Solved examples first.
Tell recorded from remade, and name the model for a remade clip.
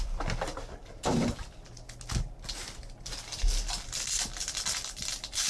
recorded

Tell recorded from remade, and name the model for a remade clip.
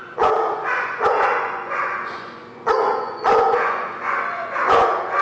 remade, vocoder, Vocos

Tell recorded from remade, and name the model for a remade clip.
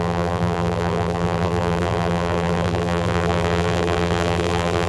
remade, vocoder, BigVGAN v2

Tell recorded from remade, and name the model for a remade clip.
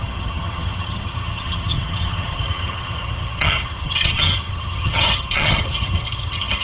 remade, vocoder, HiFi-GAN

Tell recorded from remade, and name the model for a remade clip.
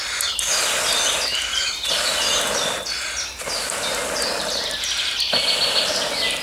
recorded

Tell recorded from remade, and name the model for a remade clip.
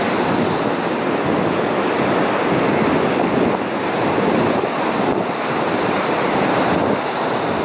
recorded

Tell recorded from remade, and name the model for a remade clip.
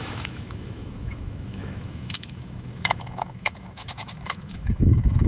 remade, autoencoder, DAC-VAE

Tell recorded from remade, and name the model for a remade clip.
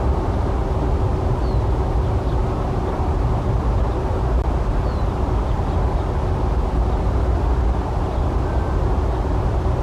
recorded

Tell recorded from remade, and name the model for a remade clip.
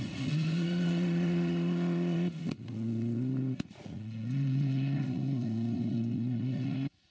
remade, vocoder, Vocos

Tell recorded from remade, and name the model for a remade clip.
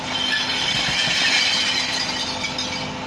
recorded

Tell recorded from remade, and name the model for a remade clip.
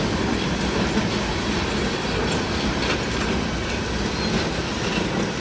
recorded